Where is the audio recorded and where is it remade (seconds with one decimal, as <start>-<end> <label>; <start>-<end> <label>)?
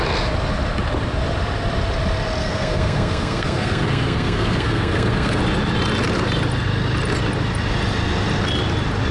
0.0-2.4 recorded; 2.4-5.4 remade; 5.4-9.1 recorded